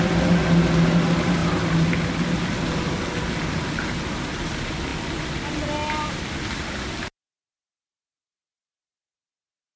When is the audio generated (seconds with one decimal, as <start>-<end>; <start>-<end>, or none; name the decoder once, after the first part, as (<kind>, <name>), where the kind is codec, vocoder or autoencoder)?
none